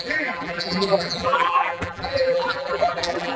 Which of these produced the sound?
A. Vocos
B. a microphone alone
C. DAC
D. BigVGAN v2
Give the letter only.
D